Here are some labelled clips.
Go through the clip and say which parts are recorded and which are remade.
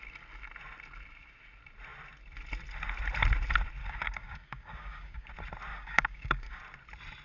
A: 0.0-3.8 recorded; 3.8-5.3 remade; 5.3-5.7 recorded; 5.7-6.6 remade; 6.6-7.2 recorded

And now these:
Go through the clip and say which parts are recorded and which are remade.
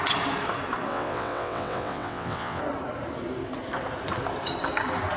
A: 0.0-0.9 recorded; 0.9-2.6 remade; 2.6-5.2 recorded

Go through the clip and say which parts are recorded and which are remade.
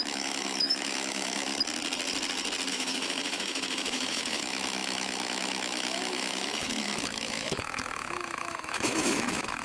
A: 0.0-1.5 remade; 1.5-2.7 recorded; 2.7-9.6 remade